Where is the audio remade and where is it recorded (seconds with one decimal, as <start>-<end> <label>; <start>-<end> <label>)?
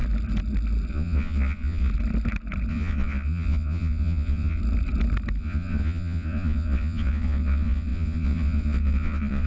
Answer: 0.0-0.9 recorded; 0.9-1.9 remade; 1.9-2.7 recorded; 2.7-4.6 remade; 4.6-5.4 recorded; 5.4-9.5 remade